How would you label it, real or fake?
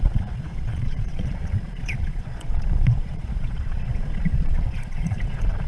fake